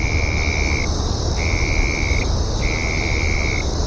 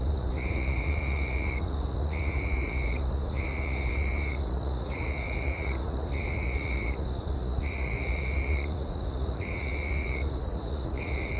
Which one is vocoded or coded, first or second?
second